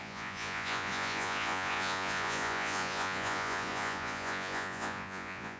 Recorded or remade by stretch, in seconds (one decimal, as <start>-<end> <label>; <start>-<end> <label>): 0.0-5.6 remade